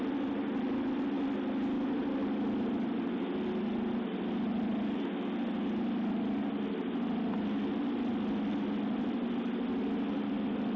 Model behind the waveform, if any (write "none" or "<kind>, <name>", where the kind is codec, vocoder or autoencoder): none